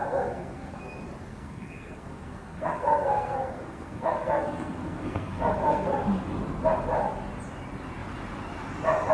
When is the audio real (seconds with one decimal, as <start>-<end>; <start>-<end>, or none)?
0.8-1.3; 6.0-9.1

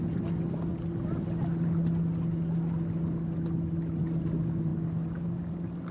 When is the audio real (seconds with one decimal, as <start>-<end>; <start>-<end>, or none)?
0.0-5.9

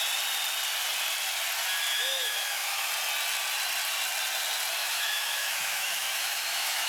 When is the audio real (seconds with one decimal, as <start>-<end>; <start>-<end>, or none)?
0.0-1.9; 2.9-4.8

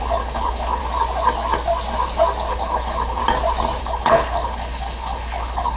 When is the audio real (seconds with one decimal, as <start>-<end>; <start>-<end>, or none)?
0.8-2.5; 3.2-3.8

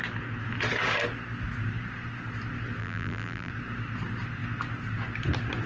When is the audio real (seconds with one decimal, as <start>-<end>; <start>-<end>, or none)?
0.0-2.8; 3.5-5.7